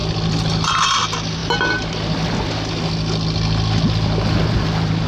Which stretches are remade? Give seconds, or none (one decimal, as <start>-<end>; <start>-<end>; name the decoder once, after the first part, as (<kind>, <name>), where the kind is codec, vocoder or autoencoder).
none